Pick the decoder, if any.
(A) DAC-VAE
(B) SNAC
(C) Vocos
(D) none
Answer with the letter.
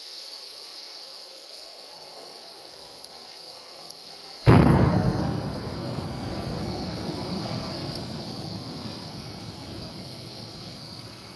B